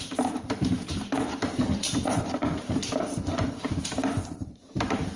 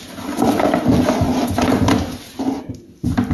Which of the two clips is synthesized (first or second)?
first